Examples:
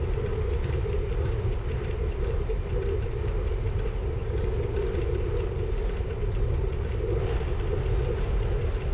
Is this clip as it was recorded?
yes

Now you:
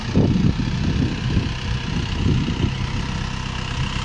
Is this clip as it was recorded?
yes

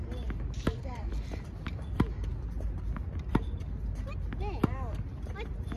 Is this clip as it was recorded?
yes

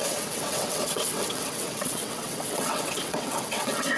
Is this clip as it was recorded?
no